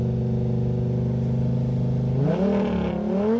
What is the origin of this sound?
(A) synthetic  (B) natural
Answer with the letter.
B